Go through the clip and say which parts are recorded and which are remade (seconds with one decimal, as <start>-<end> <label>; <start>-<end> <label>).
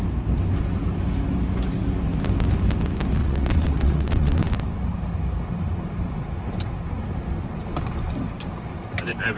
0.0-3.2 recorded; 3.2-4.5 remade; 4.5-9.4 recorded